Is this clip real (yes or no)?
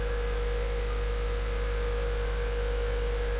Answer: yes